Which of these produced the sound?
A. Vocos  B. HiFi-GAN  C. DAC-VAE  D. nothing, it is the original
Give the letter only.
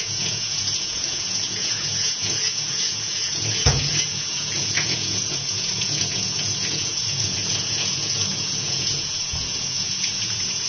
A